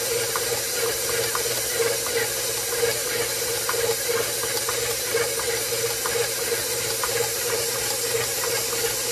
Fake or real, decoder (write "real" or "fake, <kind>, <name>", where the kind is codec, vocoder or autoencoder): real